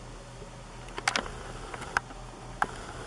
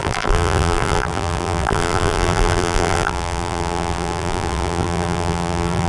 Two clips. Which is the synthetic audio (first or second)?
second